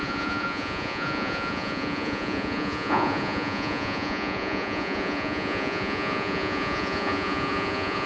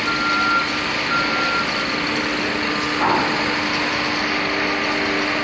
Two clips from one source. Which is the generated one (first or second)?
first